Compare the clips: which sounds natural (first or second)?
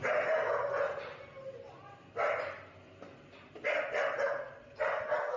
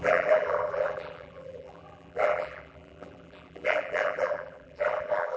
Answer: first